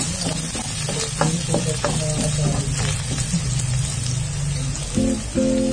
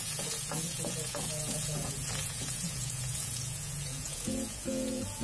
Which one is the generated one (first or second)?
second